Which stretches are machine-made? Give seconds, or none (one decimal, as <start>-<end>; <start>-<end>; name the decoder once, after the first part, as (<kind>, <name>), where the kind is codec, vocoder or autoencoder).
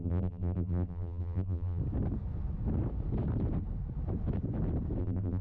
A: 0.0-1.8 (vocoder, BigVGAN v2); 5.0-5.4